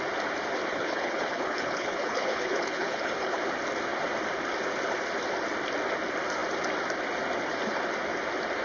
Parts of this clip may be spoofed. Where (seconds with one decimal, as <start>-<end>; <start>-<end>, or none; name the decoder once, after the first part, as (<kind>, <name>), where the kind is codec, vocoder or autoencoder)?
0.7-3.4 (codec, HILCodec)